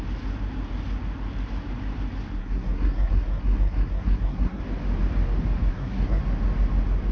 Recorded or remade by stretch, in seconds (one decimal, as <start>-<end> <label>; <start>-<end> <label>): 0.0-2.4 recorded; 2.4-4.6 remade; 4.6-5.7 recorded; 5.7-6.2 remade; 6.2-7.1 recorded